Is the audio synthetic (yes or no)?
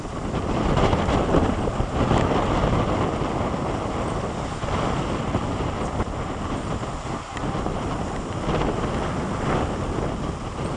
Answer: no